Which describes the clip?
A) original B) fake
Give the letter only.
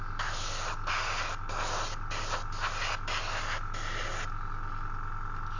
A